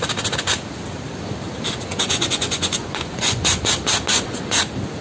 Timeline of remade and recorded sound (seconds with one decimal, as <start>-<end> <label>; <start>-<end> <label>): 0.0-1.9 recorded; 1.9-3.6 remade; 3.6-4.1 recorded; 4.1-4.6 remade; 4.6-5.0 recorded